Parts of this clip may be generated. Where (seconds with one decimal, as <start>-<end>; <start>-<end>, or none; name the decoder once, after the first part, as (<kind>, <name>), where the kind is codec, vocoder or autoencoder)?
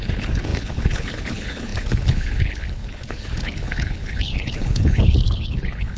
0.0-6.0 (codec, HILCodec)